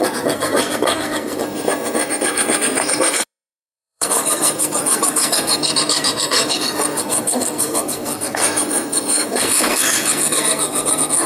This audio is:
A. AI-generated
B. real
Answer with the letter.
A